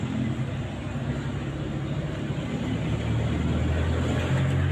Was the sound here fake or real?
real